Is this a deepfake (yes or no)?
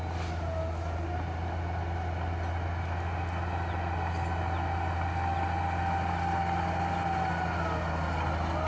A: no